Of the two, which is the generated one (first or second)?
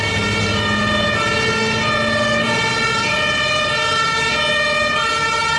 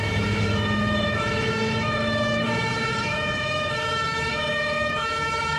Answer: second